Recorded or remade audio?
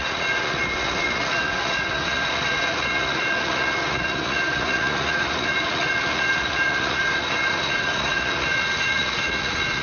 remade